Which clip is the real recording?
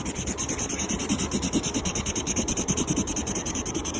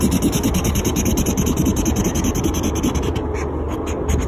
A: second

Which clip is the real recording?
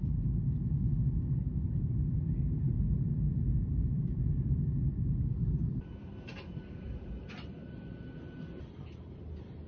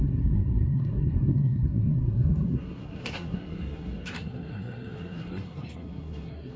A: first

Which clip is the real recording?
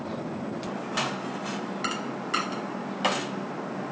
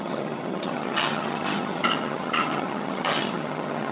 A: first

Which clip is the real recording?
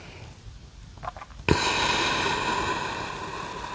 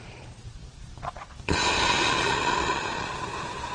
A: first